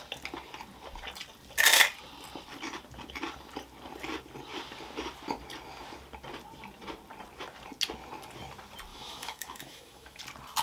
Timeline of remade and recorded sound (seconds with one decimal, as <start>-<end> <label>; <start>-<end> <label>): 0.0-8.9 recorded; 8.9-10.2 remade; 10.2-10.6 recorded